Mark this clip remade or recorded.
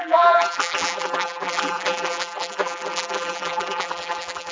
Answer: remade